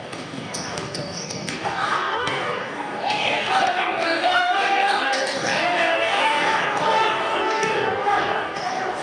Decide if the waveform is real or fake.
fake